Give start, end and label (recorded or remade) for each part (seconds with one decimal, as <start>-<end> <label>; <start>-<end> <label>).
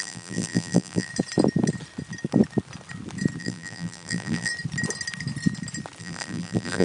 0.0-1.1 remade; 1.1-3.4 recorded; 3.4-4.5 remade; 4.5-6.0 recorded; 6.0-6.8 remade